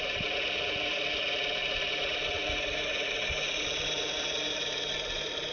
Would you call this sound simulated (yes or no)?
no